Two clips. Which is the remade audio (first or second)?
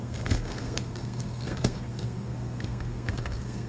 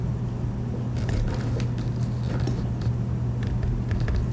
first